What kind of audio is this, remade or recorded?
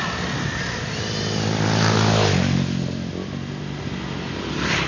recorded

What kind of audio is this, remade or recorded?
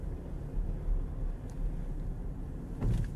recorded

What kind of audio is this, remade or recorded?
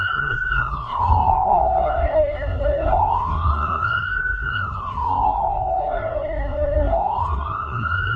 remade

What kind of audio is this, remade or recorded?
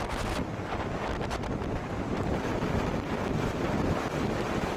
remade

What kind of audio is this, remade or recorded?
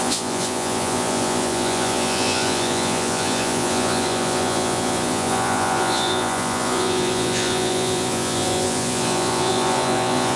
remade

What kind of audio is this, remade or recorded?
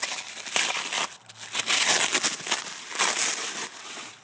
recorded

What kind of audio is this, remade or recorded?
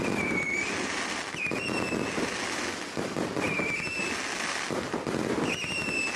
recorded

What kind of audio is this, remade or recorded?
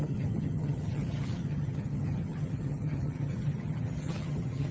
remade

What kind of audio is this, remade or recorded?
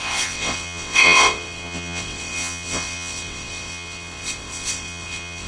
remade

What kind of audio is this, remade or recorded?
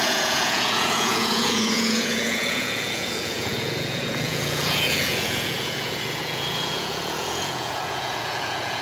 remade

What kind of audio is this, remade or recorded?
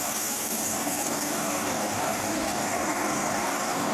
remade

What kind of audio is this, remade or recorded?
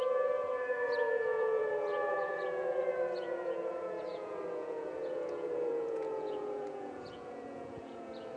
remade